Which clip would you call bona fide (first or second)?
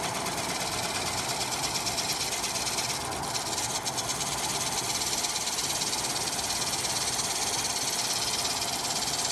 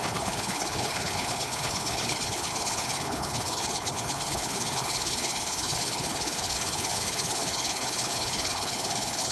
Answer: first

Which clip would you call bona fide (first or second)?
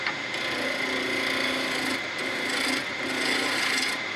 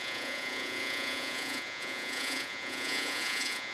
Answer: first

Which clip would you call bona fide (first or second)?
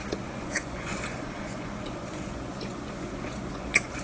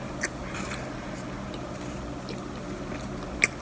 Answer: second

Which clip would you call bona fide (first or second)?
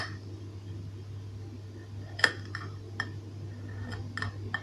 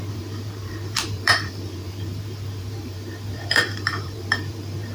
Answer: first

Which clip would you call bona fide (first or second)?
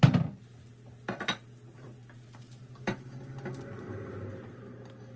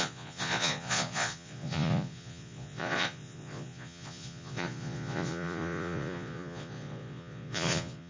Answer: first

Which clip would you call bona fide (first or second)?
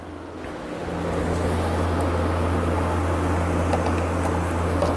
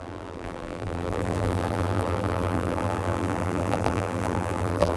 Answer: first